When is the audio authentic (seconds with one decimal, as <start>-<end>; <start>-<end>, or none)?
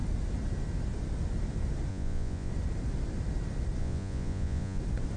0.0-1.9; 2.5-3.8; 4.8-5.2